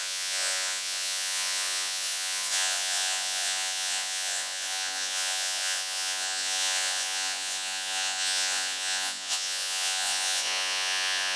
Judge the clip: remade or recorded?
remade